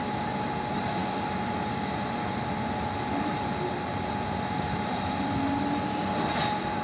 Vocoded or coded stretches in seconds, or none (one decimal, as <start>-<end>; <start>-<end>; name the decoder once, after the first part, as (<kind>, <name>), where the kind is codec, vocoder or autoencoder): none